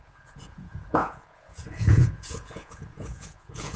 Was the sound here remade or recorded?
remade